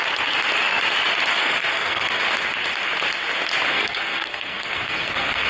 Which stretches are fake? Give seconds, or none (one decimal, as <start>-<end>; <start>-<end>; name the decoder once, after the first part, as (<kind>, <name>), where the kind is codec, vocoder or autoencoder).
1.4-2.2 (codec, SNAC); 3.7-5.5

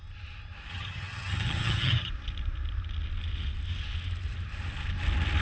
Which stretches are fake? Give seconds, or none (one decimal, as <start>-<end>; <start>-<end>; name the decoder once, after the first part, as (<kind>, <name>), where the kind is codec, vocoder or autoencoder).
0.7-2.1 (vocoder, HiFi-GAN)

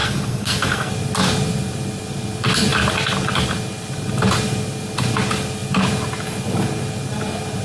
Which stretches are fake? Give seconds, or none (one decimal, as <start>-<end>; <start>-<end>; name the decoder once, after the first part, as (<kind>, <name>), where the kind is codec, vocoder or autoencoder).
0.0-0.9 (codec, SNAC)

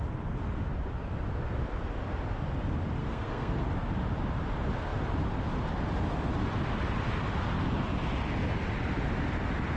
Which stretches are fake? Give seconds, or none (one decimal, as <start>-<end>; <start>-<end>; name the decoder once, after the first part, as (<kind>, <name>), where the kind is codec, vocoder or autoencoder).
3.0-3.6 (codec, SNAC)

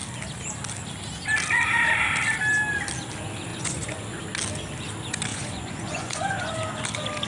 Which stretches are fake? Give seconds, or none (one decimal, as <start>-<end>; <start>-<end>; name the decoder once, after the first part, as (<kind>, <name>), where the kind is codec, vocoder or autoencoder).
3.5-4.2 (vocoder, Vocos); 5.3-6.5

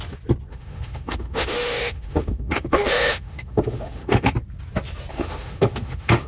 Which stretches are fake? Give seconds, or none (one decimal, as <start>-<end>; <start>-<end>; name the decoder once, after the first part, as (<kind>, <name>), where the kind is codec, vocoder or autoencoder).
0.5-4.3 (autoencoder, DAC-VAE); 5.1-6.3